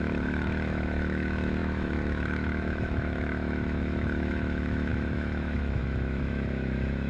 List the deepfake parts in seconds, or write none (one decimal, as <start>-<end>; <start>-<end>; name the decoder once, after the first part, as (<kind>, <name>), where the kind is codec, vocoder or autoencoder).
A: 0.0-7.1 (autoencoder, DAC-VAE)